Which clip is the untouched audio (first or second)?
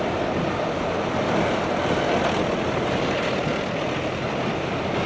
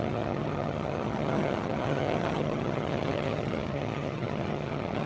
first